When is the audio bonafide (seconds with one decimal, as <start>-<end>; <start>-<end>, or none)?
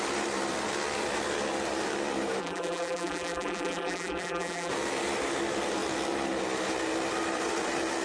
0.0-2.4; 4.7-8.0